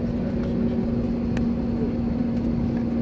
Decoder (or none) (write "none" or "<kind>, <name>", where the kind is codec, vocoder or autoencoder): none